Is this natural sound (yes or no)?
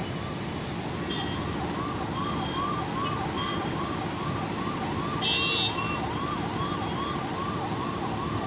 yes